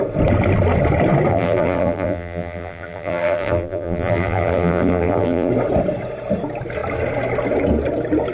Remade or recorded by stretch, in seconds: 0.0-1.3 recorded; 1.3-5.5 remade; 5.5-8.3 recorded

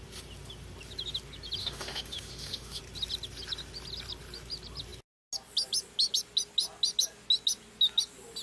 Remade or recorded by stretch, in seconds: 0.0-1.6 recorded; 1.6-2.8 remade; 2.8-8.4 recorded